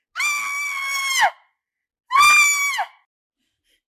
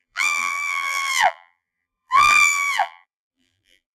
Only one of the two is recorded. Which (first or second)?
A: first